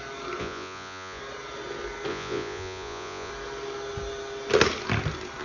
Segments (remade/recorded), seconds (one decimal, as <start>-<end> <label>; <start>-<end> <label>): 0.0-0.4 recorded; 0.4-1.2 remade; 1.2-2.1 recorded; 2.1-3.3 remade; 3.3-5.4 recorded